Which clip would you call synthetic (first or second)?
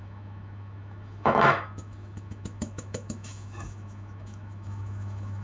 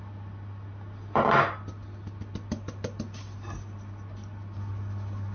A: first